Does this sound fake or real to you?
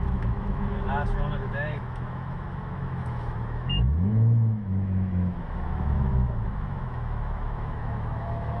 fake